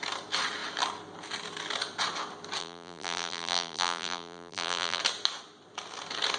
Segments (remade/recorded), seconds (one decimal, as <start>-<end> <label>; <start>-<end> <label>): 0.0-2.6 recorded; 2.6-5.0 remade; 5.0-6.4 recorded